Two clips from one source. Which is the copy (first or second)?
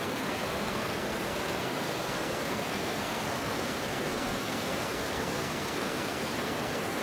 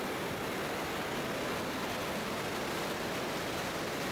first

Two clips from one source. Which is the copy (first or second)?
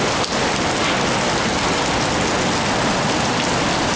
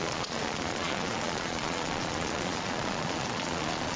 second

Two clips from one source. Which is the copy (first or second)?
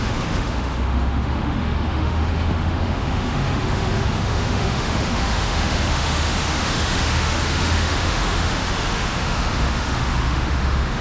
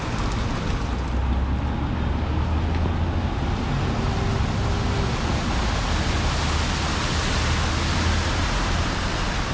first